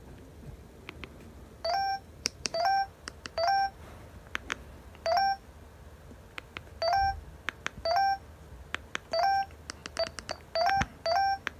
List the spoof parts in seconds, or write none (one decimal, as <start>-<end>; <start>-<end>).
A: 1.9-4.1; 4.5-5.2